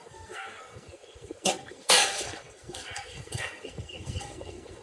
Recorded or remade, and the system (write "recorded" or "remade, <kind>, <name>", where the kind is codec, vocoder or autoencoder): remade, codec, SNAC